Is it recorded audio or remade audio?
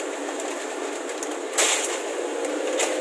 recorded